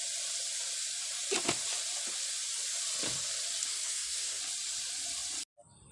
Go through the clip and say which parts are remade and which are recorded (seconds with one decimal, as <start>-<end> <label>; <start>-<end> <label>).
0.0-3.7 recorded; 3.7-4.4 remade; 4.4-5.9 recorded